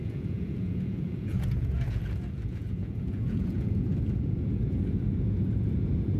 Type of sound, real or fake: fake